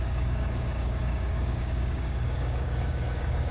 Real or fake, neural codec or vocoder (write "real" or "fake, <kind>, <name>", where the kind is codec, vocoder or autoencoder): fake, codec, DAC